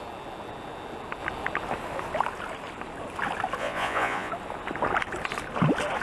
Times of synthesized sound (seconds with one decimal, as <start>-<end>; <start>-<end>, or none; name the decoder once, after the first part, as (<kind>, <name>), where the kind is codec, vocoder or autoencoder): 3.6-4.3 (vocoder, Vocos)